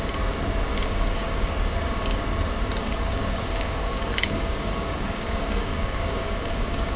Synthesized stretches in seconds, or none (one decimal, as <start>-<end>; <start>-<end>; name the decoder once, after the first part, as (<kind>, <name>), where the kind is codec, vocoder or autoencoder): 0.7-1.5 (codec, DAC); 2.8-7.0